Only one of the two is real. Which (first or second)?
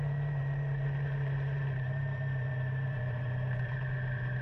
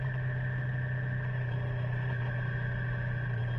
second